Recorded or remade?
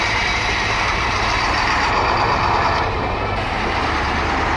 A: remade